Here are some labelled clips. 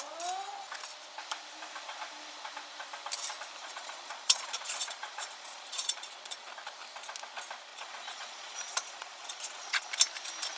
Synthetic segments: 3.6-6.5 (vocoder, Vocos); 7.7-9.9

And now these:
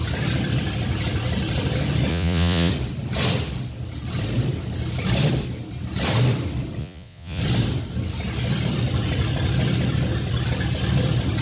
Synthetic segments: 2.1-2.7 (vocoder, Vocos); 6.8-7.4

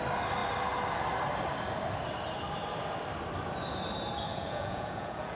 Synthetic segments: 4.3-5.4 (vocoder, Vocos)

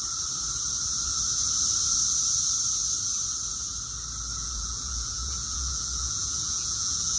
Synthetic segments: 4.4-7.2 (vocoder, Vocos)

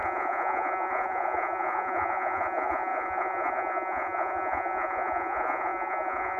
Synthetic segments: 0.0-6.4 (vocoder, Vocos)

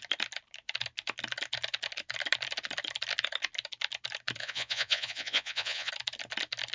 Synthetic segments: 4.4-5.9 (vocoder, Vocos)

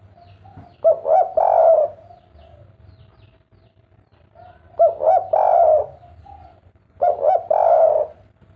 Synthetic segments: 6.4-7.2 (vocoder, Vocos)